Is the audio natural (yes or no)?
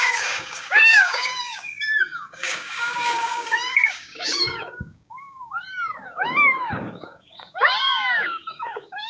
no